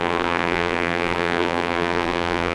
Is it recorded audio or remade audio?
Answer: remade